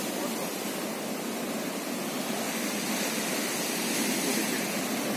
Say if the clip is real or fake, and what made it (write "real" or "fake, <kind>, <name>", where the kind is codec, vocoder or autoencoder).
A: real